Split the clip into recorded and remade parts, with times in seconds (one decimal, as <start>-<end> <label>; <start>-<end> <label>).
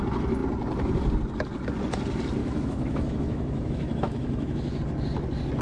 0.0-2.4 recorded; 2.4-4.8 remade; 4.8-5.6 recorded